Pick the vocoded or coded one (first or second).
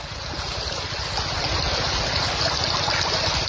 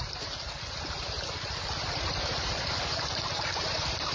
second